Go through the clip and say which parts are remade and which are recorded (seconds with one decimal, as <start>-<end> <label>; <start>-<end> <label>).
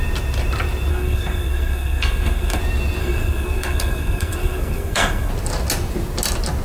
0.0-0.9 recorded; 0.9-2.6 remade; 2.6-3.0 recorded; 3.0-5.3 remade; 5.3-6.6 recorded